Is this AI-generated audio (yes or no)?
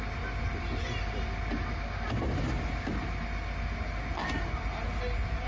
no